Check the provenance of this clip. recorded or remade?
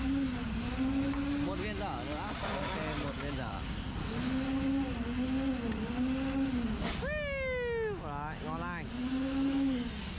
recorded